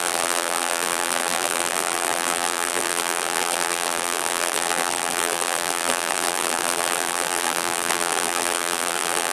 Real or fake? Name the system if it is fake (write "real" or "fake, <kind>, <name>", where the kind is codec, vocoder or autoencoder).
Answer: fake, vocoder, BigVGAN v2